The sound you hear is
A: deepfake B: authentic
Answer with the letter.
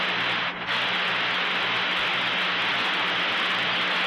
B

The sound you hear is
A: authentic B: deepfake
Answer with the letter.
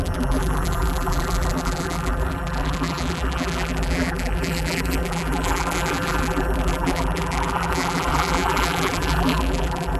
B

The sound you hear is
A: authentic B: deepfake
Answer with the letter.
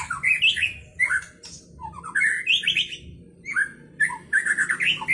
A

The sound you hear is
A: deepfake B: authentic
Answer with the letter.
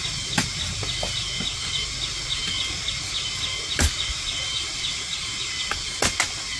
B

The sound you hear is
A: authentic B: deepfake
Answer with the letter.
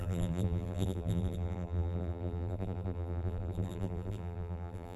B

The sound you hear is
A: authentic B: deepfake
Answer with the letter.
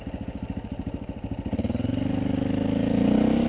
A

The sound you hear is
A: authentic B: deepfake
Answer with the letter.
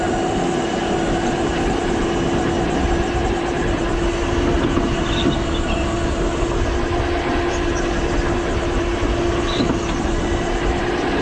A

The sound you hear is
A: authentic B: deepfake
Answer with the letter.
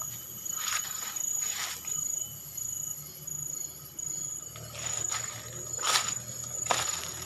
A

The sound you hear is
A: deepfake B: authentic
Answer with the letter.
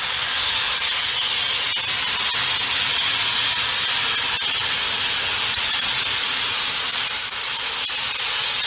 B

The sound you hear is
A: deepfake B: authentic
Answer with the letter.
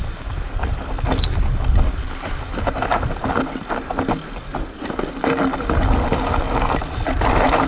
B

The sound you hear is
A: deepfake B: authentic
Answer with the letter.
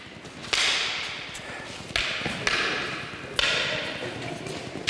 B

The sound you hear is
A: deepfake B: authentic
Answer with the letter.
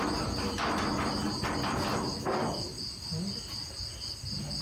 B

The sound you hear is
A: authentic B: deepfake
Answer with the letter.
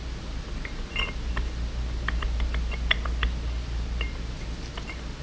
A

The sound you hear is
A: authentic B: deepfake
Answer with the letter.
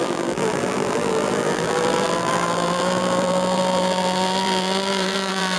B